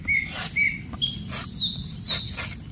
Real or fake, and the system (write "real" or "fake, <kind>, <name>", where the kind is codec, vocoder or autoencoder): real